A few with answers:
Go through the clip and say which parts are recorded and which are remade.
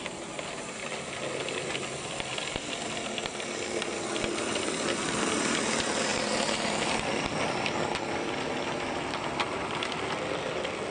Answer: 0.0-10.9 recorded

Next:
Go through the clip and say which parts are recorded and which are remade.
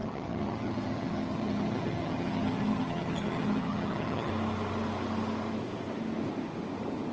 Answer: 0.0-4.3 remade; 4.3-7.1 recorded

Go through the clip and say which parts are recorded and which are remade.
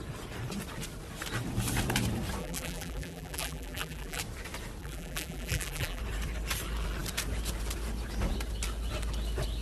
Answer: 0.0-2.4 recorded; 2.4-4.2 remade; 4.2-4.8 recorded; 4.8-6.0 remade; 6.0-9.6 recorded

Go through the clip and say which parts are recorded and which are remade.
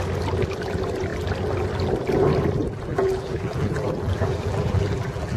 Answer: 0.0-2.9 recorded; 2.9-5.4 remade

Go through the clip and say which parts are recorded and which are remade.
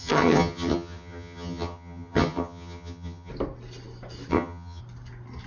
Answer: 0.0-3.3 remade; 3.3-4.3 recorded; 4.3-4.8 remade; 4.8-5.5 recorded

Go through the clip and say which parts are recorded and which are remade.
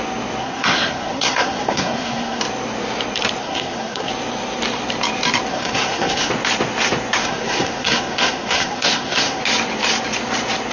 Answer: 0.0-0.4 recorded; 0.4-2.4 remade; 2.4-3.4 recorded; 3.4-4.1 remade; 4.1-5.5 recorded; 5.5-6.3 remade; 6.3-7.2 recorded; 7.2-9.4 remade; 9.4-10.7 recorded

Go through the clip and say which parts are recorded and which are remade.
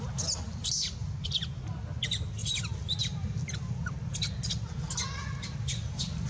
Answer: 0.0-6.3 recorded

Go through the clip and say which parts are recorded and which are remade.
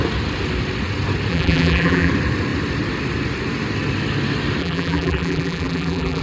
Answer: 0.0-1.3 recorded; 1.3-2.1 remade; 2.1-4.6 recorded; 4.6-6.2 remade